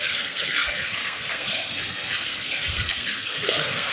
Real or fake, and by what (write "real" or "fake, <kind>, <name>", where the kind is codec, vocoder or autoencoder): fake, codec, SNAC